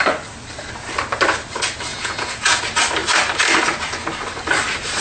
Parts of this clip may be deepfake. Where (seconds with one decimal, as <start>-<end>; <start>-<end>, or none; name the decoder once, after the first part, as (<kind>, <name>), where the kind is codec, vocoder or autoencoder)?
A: 1.9-2.6 (vocoder, Vocos)